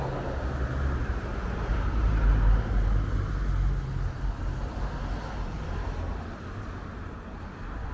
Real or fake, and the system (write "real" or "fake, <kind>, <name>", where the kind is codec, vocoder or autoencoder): real